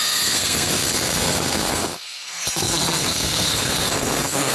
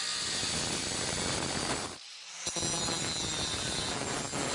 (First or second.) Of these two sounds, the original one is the second